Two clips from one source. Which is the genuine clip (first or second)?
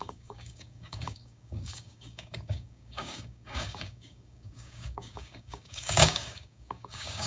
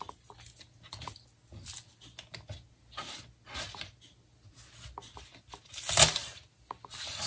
second